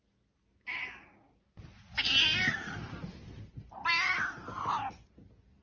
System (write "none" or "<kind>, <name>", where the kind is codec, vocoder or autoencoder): none